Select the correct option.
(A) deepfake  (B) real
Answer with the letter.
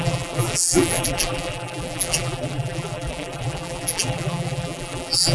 A